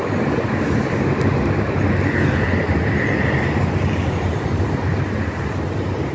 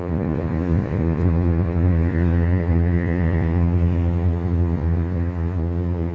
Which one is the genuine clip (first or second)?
first